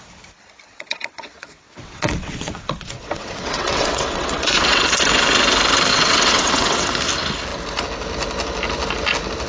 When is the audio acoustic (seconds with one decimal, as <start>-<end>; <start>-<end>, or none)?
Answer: 0.0-0.7; 4.8-5.9; 6.9-9.5